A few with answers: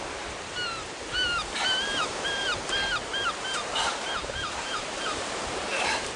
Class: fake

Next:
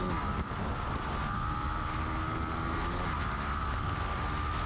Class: real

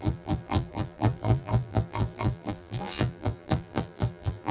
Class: fake